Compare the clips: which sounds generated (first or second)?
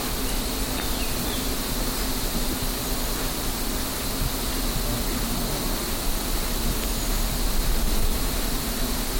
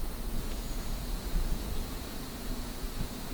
second